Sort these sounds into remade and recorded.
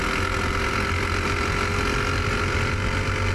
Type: recorded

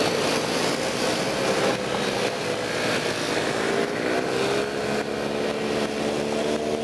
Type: recorded